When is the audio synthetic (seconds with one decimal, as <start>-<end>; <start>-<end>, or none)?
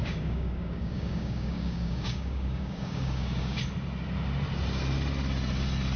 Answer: 0.0-3.6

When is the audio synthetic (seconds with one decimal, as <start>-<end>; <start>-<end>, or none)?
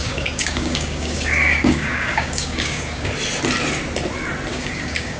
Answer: 0.0-3.1; 4.5-5.2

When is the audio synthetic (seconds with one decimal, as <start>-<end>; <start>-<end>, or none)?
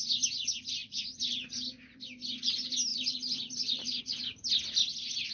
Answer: none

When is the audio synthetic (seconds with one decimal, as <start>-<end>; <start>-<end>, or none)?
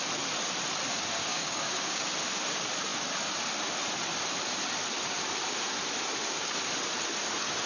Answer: 1.3-2.0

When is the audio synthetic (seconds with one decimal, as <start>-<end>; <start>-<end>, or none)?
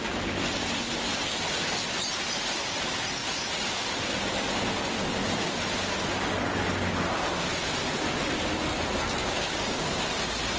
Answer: 9.2-10.0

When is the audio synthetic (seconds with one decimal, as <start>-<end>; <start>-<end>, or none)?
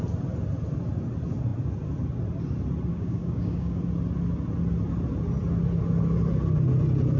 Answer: 2.9-3.8